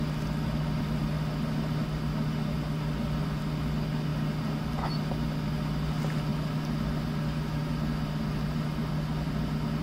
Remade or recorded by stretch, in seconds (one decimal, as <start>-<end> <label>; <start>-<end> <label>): 0.0-9.8 recorded